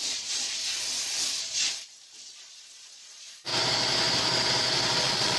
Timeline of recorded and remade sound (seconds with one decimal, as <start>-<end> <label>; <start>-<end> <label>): 0.0-0.6 remade; 0.6-1.4 recorded; 1.4-3.5 remade; 3.5-5.0 recorded; 5.0-5.4 remade